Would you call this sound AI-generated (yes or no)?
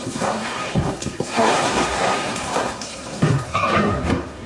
yes